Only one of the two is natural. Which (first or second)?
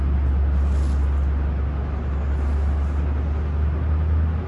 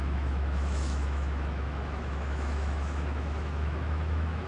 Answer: first